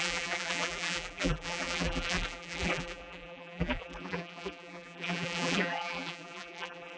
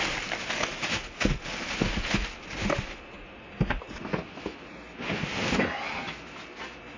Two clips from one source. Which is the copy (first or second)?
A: first